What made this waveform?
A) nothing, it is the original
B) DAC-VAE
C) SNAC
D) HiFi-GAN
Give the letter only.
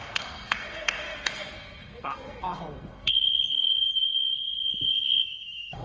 C